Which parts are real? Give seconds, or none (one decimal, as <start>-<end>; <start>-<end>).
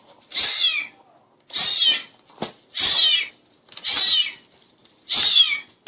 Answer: 0.0-4.8